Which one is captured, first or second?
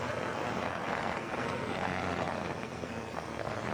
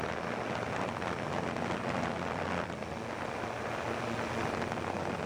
second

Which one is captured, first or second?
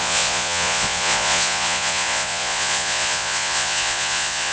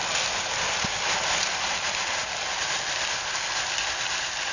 second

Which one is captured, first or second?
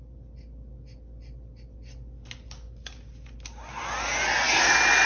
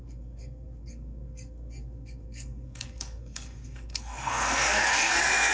first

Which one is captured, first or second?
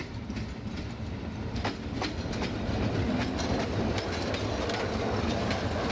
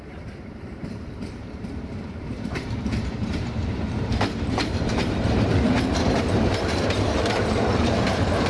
first